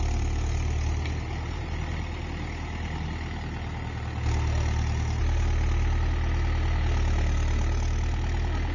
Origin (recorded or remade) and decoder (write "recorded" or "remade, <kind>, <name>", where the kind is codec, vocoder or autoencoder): recorded